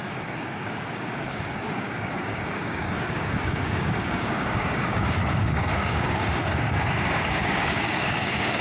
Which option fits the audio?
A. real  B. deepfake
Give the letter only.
B